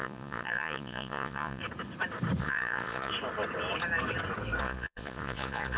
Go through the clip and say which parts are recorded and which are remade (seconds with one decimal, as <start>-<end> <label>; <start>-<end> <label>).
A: 0.0-1.6 remade; 1.6-2.4 recorded; 2.4-3.1 remade; 3.1-4.6 recorded; 4.6-5.8 remade